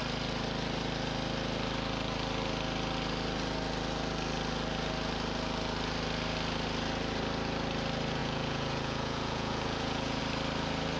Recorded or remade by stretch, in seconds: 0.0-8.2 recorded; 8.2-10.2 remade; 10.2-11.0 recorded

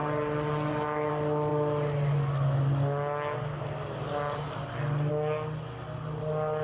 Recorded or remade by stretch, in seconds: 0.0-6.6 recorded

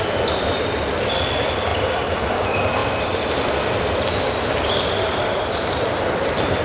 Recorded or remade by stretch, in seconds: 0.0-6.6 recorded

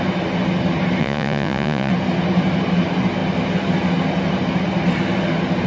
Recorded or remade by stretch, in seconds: 0.0-1.0 recorded; 1.0-1.9 remade; 1.9-5.7 recorded

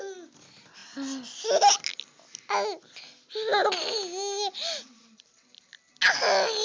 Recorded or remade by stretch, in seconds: 0.0-6.6 recorded